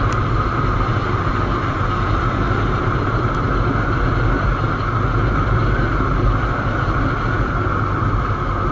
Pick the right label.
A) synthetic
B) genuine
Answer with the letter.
B